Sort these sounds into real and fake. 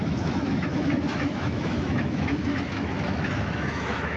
fake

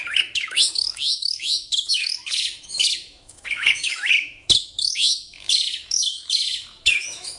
fake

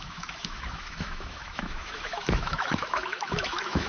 fake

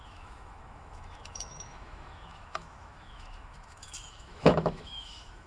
fake